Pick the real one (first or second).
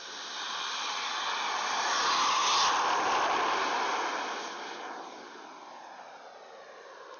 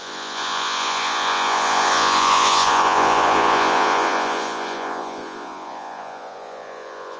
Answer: first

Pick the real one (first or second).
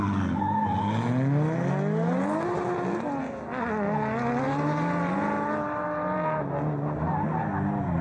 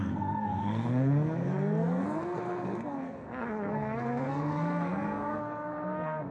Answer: first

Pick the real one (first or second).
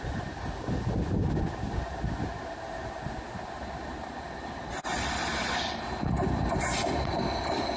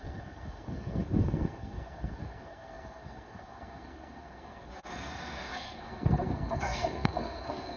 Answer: first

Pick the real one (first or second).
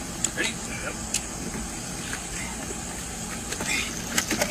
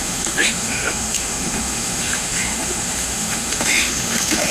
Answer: first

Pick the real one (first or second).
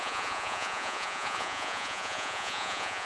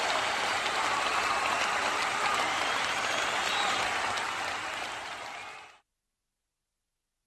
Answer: second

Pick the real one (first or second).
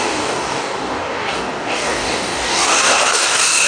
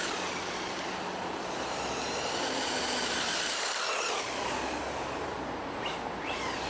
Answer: second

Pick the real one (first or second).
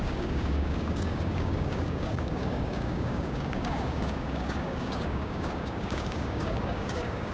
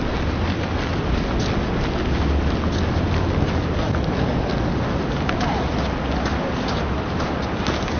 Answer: second